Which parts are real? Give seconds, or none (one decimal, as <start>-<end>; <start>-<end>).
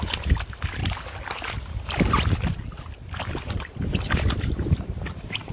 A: 0.8-4.1